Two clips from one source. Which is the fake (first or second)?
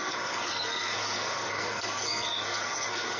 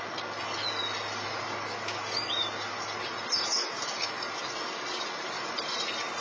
first